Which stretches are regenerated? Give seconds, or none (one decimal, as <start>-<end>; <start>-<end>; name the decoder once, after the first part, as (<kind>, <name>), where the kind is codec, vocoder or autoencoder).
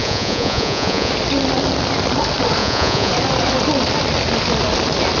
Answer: 0.0-1.1 (vocoder, Vocos); 2.6-3.1